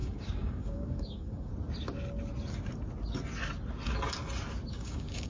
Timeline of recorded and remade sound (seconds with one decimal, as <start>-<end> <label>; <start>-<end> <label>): 0.0-1.5 remade; 1.5-4.7 recorded; 4.7-5.3 remade